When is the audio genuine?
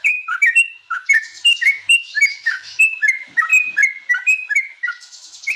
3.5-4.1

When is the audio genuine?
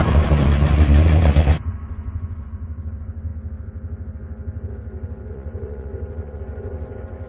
3.3-5.3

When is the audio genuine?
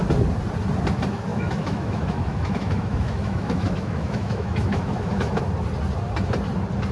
0.0-1.3; 5.4-6.9